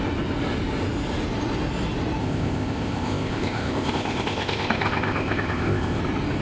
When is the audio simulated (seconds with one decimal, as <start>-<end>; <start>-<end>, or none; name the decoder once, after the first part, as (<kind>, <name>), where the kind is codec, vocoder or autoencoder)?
2.2-6.0 (codec, ZipCodec)